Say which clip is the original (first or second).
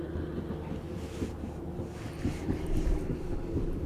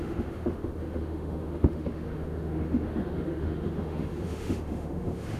first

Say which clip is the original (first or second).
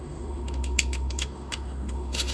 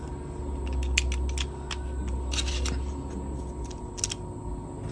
second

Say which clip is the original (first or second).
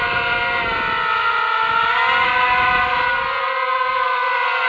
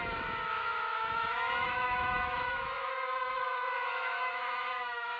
first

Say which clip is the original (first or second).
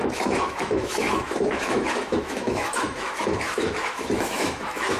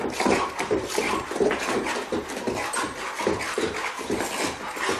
second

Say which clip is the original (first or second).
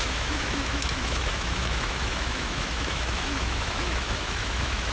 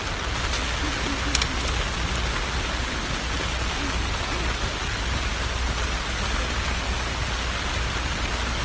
second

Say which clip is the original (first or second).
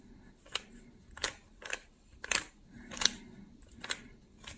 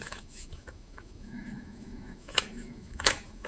first